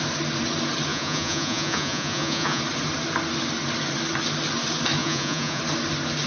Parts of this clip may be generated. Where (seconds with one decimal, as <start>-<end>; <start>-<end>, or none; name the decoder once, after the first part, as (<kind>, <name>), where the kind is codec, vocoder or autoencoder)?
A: 0.9-2.6 (vocoder, Vocos); 5.0-5.6